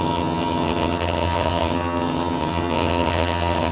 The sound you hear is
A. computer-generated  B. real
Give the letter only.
A